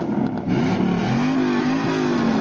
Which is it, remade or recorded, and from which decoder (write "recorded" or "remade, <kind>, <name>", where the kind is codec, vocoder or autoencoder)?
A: recorded